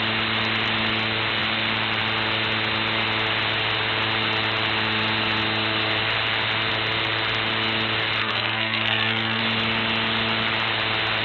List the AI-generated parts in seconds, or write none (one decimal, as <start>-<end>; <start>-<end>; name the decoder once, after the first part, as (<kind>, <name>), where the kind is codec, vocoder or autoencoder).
8.2-9.4 (codec, SNAC)